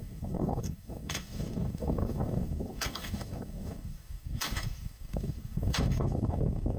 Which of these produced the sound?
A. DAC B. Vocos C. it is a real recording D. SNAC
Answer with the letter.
A